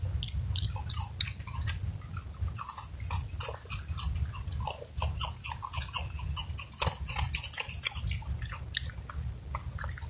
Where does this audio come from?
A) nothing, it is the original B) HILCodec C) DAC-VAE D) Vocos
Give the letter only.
A